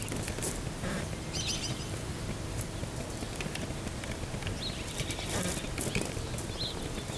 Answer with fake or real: real